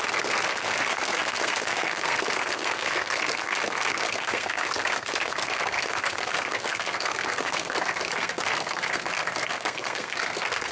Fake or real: fake